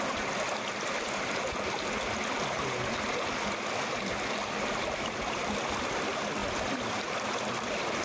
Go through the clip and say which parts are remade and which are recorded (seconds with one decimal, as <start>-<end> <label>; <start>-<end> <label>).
0.0-6.4 recorded; 6.4-8.0 remade